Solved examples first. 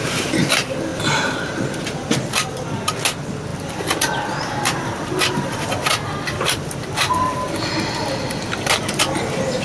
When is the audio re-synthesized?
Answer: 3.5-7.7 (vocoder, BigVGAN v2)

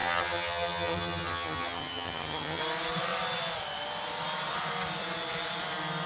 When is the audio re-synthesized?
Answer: 0.0-2.6 (vocoder, HiFi-GAN)